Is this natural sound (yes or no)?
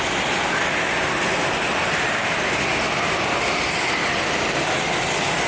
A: yes